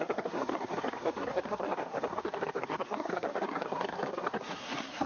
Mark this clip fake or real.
fake